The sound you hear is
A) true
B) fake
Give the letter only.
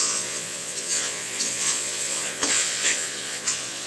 B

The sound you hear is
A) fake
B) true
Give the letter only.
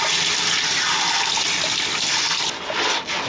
B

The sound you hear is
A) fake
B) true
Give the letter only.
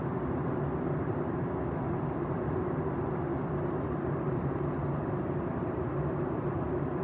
B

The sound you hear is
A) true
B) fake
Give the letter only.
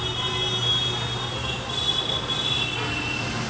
A